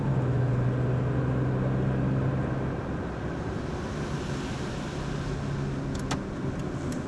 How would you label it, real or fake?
real